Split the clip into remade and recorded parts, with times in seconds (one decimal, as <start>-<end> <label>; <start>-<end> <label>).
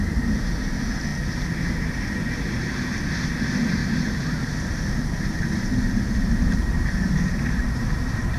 0.0-3.8 recorded; 3.8-8.4 remade